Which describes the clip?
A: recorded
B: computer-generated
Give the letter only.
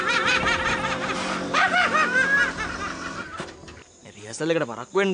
B